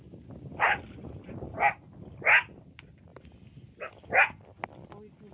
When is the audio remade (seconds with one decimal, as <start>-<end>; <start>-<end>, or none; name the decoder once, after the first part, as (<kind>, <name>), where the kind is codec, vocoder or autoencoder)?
none